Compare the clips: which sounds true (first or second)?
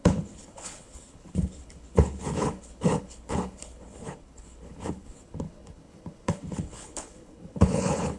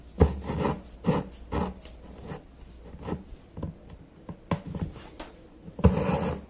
second